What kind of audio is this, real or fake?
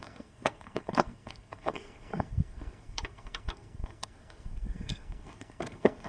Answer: fake